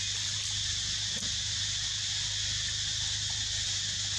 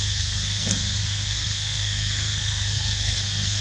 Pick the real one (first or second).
first